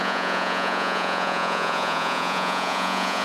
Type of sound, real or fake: fake